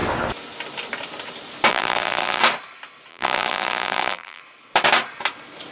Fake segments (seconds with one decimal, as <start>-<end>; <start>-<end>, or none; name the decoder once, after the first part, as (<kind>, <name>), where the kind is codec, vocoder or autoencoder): 1.7-2.4 (vocoder, BigVGAN v2); 3.1-4.4